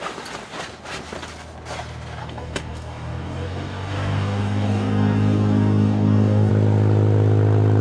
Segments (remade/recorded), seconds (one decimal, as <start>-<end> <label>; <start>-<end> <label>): 0.0-2.2 recorded; 2.2-6.5 remade; 6.5-7.8 recorded